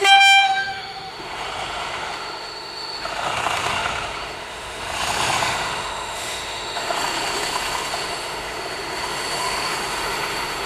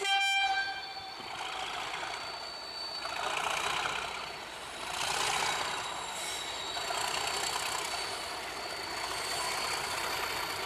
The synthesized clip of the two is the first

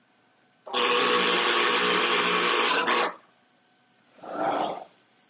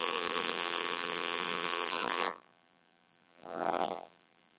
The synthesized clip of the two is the second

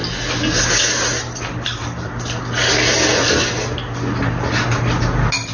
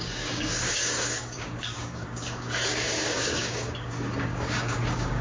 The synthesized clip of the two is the second